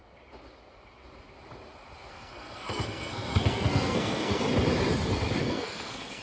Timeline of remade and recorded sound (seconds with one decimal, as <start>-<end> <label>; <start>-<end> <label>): 0.0-2.1 recorded; 2.1-4.4 remade; 4.4-5.4 recorded; 5.4-6.2 remade